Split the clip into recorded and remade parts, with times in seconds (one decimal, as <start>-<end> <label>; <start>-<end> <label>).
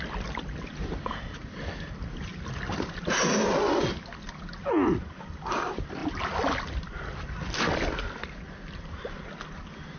0.0-10.0 recorded